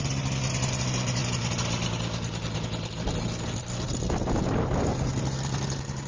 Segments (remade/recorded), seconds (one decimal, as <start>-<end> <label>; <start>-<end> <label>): 0.0-6.1 recorded